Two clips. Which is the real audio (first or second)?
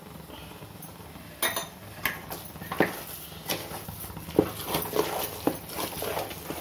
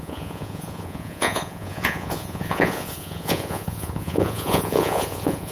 first